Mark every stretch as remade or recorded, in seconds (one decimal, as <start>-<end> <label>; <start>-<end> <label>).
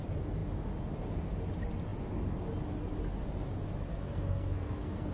0.0-3.9 recorded; 3.9-5.1 remade